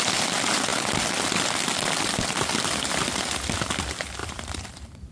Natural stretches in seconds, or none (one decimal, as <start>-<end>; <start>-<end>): 0.0-4.2

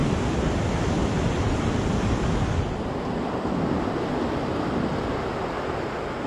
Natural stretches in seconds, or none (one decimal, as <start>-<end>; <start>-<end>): 0.6-1.0; 4.7-6.3

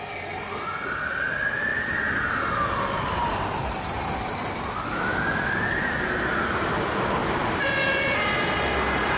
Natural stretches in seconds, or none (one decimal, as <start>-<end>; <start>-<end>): 0.0-1.7; 2.4-7.2; 7.9-9.2

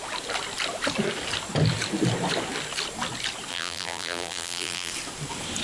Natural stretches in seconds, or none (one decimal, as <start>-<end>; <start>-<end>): 0.0-3.5; 4.9-5.6

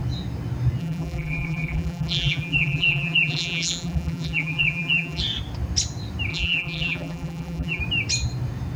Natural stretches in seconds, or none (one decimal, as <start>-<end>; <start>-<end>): 0.0-0.8; 5.2-6.3; 7.8-8.8

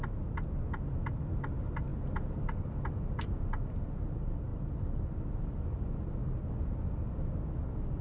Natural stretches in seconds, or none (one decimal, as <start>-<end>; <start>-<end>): 0.0-8.0

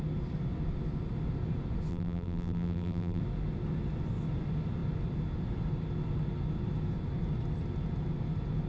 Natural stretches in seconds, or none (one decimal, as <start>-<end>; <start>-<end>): 0.0-1.9; 3.2-8.7